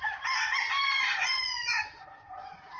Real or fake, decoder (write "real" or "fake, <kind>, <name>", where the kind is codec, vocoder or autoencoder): fake, vocoder, Vocos